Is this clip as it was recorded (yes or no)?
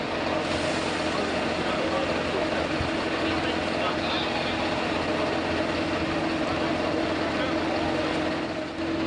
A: yes